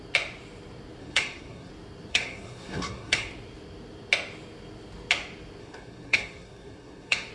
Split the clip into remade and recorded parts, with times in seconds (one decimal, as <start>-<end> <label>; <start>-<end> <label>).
0.0-1.0 recorded; 1.0-1.7 remade; 1.7-2.1 recorded; 2.1-3.3 remade; 3.3-5.6 recorded; 5.6-7.3 remade